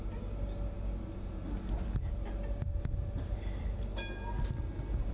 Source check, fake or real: real